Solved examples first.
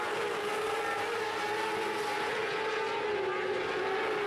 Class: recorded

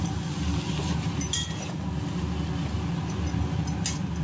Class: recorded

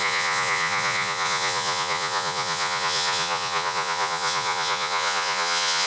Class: remade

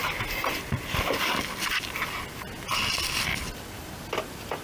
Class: recorded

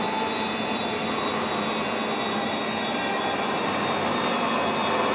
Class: recorded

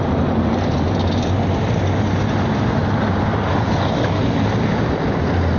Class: recorded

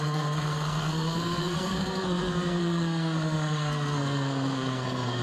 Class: remade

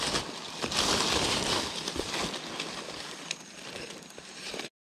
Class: recorded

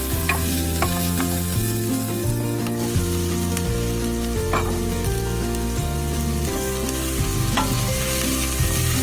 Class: recorded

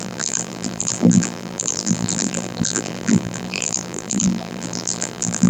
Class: remade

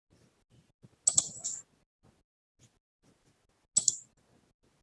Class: recorded